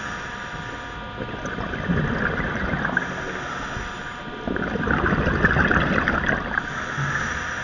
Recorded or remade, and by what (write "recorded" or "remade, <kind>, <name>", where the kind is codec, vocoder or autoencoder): recorded